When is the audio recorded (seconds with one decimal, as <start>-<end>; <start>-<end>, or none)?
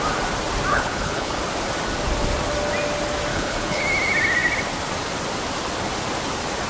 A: 0.0-0.7; 1.4-3.3; 3.8-6.7